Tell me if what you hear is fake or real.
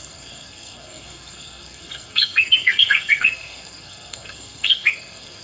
fake